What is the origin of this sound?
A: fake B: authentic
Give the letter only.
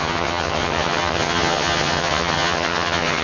A